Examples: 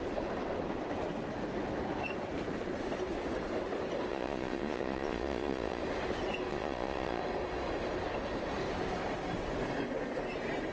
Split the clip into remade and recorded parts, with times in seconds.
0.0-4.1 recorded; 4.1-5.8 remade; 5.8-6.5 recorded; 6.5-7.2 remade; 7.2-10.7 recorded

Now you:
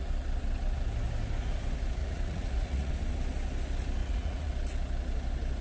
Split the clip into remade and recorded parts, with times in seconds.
0.0-2.0 recorded; 2.0-2.9 remade; 2.9-4.0 recorded; 4.0-4.5 remade; 4.5-5.6 recorded

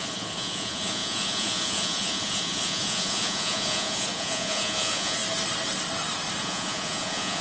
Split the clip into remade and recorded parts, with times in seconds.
0.0-5.2 remade; 5.2-6.4 recorded; 6.4-7.4 remade

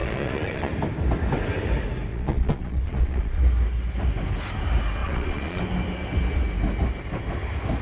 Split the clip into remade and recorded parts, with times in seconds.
0.0-0.7 remade; 0.7-2.1 recorded; 2.1-3.4 remade; 3.4-5.0 recorded; 5.0-5.6 remade; 5.6-7.8 recorded

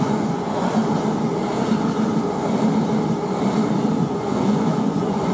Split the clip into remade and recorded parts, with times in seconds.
0.0-0.8 remade; 0.8-4.0 recorded; 4.0-5.3 remade

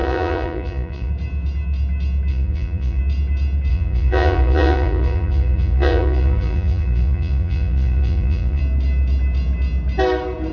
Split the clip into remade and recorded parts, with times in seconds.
0.0-1.1 remade; 1.1-2.3 recorded; 2.3-3.0 remade; 3.0-3.7 recorded; 3.7-8.6 remade; 8.6-10.5 recorded

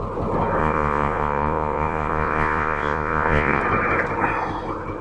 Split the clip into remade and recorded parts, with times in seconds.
0.0-0.6 recorded; 0.6-3.6 remade; 3.6-5.0 recorded

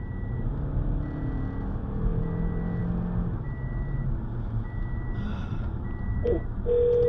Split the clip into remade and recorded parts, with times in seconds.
0.0-7.1 recorded